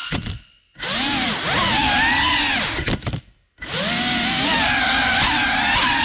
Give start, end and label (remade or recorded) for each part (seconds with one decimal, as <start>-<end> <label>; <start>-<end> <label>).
0.0-6.0 recorded